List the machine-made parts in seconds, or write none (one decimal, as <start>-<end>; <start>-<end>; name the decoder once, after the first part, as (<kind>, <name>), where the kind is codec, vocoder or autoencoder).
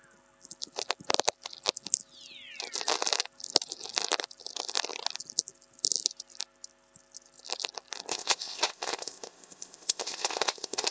8.1-10.9 (codec, ZipCodec)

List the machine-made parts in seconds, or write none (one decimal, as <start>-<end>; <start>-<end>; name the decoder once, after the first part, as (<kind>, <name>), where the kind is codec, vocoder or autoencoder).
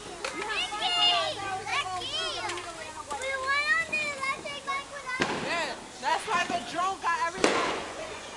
6.1-6.8 (vocoder, Vocos); 7.5-8.4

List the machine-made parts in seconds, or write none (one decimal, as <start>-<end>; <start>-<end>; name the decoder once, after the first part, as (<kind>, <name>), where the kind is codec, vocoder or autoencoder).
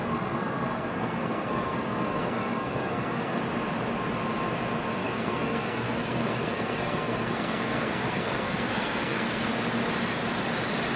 0.0-3.4 (codec, SNAC); 5.0-9.5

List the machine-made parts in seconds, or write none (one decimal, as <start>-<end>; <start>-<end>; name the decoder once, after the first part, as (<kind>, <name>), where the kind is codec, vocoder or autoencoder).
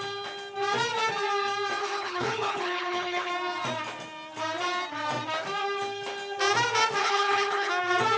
1.8-3.3 (codec, HILCodec); 7.0-7.7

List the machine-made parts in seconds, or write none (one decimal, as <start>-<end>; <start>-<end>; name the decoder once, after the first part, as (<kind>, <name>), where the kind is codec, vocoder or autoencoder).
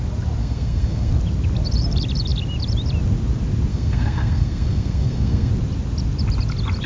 0.4-1.1 (codec, SNAC); 3.7-5.5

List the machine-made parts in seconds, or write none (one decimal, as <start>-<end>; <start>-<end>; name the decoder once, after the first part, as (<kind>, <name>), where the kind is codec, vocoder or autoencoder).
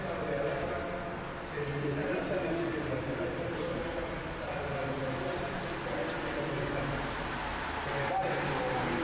none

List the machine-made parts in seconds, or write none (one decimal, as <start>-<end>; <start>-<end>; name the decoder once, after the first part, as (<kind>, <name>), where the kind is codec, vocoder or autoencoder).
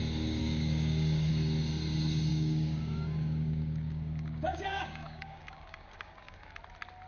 0.4-1.3 (codec, DAC); 2.3-6.6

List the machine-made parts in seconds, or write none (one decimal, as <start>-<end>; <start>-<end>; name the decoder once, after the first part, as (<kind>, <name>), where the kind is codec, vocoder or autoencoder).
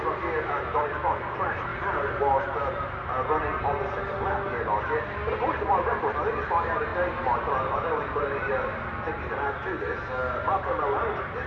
1.7-3.8 (vocoder, BigVGAN v2); 6.9-9.3